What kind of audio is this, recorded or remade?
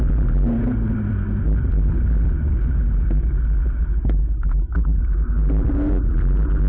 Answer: recorded